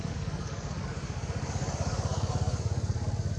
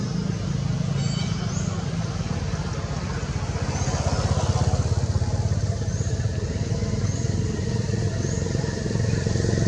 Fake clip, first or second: first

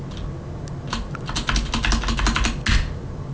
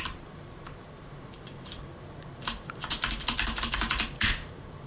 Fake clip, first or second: second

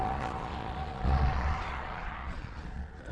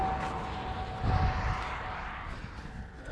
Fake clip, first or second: first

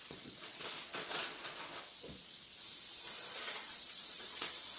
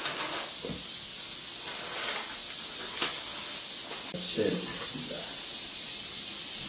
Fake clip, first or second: first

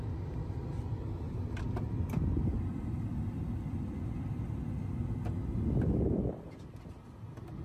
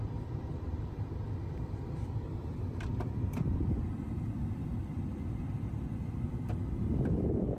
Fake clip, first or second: second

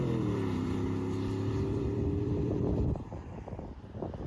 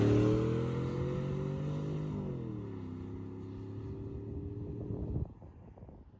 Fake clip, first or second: first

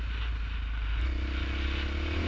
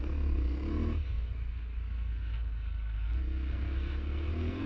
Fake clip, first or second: second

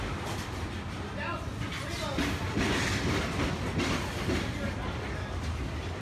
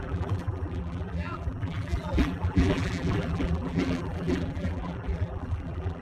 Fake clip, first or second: second